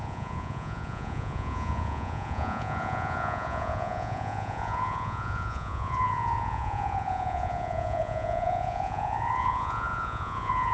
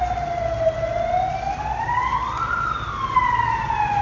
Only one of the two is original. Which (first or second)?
second